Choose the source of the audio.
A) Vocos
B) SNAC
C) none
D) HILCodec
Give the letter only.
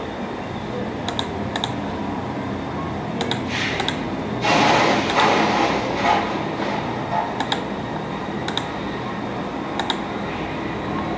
C